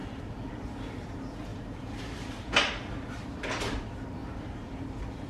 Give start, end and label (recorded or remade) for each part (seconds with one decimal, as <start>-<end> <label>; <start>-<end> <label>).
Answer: 0.0-0.5 remade; 0.5-1.5 recorded; 1.5-3.3 remade; 3.3-4.2 recorded; 4.2-4.8 remade; 4.8-5.3 recorded